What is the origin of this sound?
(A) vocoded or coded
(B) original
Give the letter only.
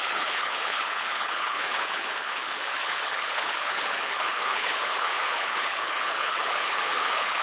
A